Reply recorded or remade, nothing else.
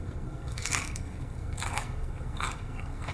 remade